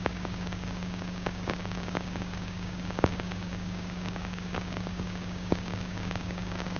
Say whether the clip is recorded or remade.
remade